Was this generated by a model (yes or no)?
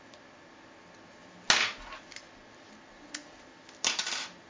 no